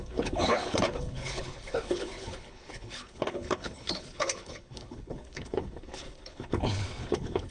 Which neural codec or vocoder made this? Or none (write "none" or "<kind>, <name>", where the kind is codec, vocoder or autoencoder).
codec, HILCodec